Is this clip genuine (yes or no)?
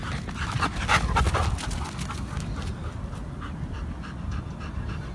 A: yes